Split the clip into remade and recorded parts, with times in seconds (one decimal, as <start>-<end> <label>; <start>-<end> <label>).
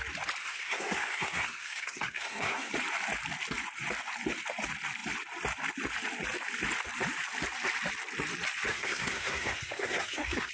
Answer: 0.0-0.4 recorded; 0.4-2.7 remade; 2.7-8.7 recorded; 8.7-10.5 remade